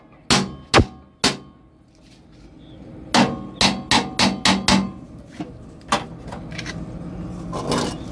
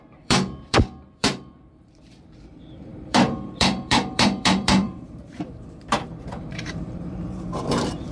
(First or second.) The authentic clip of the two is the first